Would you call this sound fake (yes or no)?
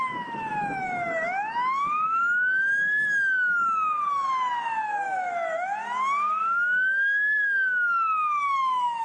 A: yes